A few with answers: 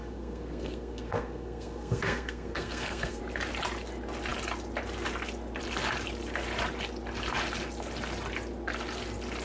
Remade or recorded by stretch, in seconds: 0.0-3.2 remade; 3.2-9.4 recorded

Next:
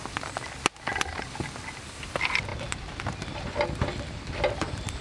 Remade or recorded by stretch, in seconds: 0.0-5.0 recorded

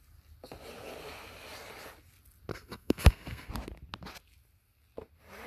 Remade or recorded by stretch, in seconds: 0.0-2.5 recorded; 2.5-3.5 remade; 3.5-5.5 recorded

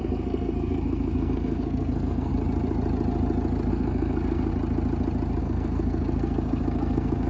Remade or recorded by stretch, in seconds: 0.0-2.3 remade; 2.3-3.7 recorded; 3.7-4.5 remade; 4.5-5.4 recorded; 5.4-7.3 remade

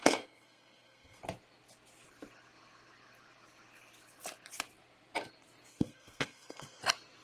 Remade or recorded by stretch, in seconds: 0.0-1.2 remade; 1.2-5.7 recorded; 5.7-6.8 remade; 6.8-7.2 recorded

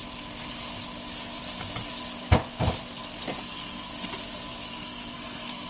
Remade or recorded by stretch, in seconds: 0.0-3.4 recorded; 3.4-3.9 remade; 3.9-4.7 recorded; 4.7-5.7 remade